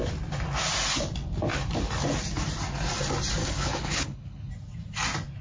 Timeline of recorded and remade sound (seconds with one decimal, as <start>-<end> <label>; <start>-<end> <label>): 0.0-3.4 recorded; 3.4-4.5 remade; 4.5-5.4 recorded

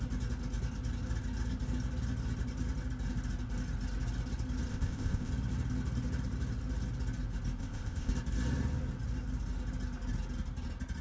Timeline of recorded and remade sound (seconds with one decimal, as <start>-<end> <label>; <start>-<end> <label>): 0.0-4.7 recorded; 4.7-5.3 remade; 5.3-7.6 recorded; 7.6-8.1 remade; 8.1-11.0 recorded

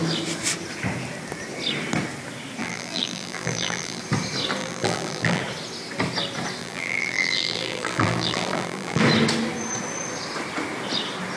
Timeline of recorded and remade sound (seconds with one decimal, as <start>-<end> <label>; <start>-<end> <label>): 0.0-2.6 recorded; 2.6-4.0 remade; 4.0-4.6 recorded; 4.6-5.4 remade; 5.4-6.6 recorded; 6.6-9.0 remade; 9.0-11.4 recorded

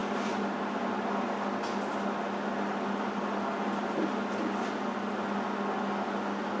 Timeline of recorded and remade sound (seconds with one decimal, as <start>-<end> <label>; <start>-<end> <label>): 0.0-6.6 recorded

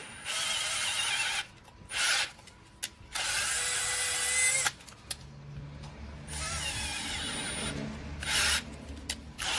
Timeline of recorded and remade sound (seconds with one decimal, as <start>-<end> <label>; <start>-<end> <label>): 0.0-9.6 recorded